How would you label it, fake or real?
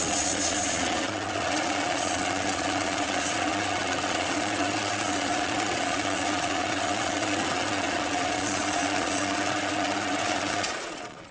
fake